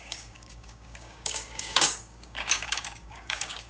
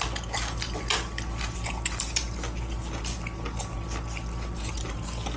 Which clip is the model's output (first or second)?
first